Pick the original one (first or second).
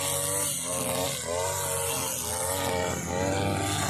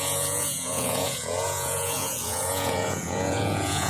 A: first